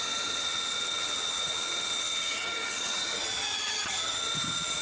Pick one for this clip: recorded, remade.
remade